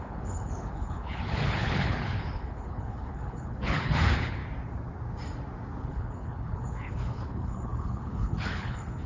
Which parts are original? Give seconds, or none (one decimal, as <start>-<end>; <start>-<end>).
4.4-5.8